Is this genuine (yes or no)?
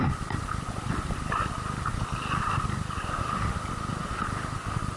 yes